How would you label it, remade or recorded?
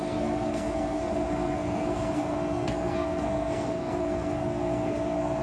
remade